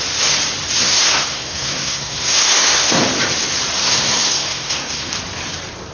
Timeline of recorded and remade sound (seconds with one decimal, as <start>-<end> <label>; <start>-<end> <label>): 0.0-0.8 recorded; 0.8-3.0 remade; 3.0-3.8 recorded; 3.8-5.1 remade; 5.1-5.9 recorded